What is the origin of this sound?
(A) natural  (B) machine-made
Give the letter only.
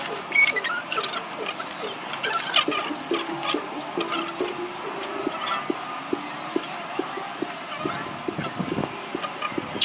A